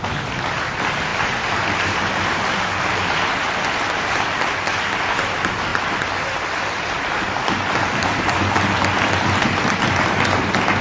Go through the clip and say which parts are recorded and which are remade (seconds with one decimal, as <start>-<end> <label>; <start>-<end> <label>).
0.0-10.8 recorded